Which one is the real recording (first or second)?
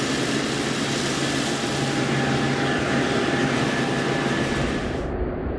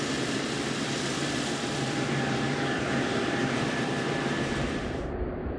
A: first